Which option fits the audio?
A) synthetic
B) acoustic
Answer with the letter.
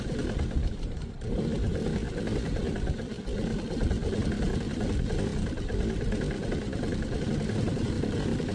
B